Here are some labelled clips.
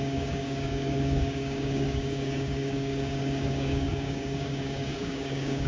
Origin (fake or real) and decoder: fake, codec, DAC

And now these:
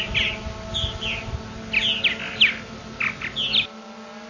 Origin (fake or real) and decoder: real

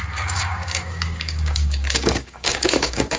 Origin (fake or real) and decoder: fake, codec, DAC